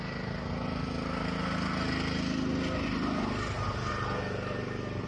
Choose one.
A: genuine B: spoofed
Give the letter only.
A